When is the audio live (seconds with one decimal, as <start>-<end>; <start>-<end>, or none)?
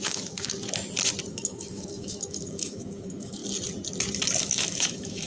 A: 0.5-1.3; 3.4-4.4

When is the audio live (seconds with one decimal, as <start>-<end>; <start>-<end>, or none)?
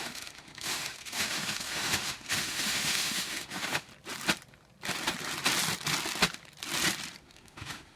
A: 3.9-7.2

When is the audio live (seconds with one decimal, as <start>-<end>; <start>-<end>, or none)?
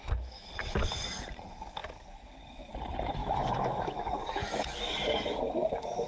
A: 0.5-1.8; 2.7-3.2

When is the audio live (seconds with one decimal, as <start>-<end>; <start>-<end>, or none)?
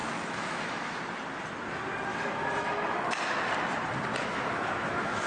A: 1.0-2.1; 3.4-4.1